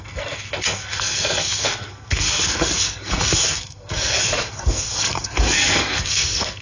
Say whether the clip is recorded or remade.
remade